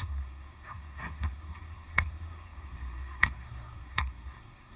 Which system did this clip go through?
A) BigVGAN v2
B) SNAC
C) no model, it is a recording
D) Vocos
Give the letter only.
B